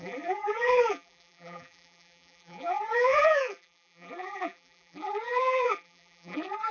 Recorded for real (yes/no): no